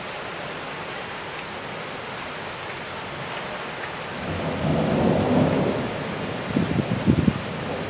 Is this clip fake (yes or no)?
no